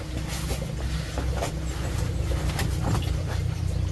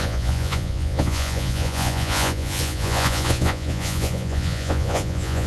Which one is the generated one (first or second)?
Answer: second